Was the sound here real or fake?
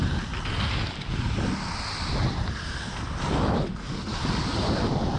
real